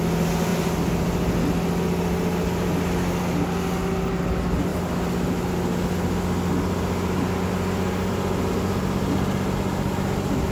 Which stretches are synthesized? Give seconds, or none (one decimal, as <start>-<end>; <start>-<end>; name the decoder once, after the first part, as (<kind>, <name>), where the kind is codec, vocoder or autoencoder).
none